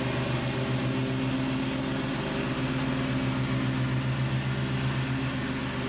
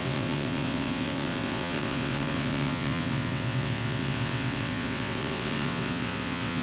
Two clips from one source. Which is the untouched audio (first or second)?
first